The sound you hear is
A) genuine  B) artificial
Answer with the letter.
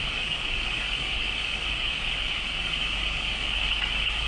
B